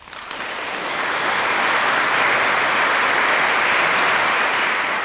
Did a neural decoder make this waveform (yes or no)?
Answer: no